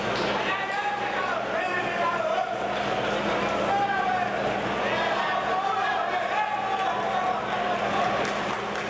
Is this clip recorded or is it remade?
recorded